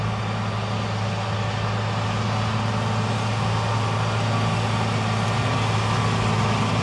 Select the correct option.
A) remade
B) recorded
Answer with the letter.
B